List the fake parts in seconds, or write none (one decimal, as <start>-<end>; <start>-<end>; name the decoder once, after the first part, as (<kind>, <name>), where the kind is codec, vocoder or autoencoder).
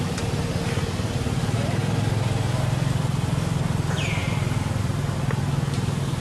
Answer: none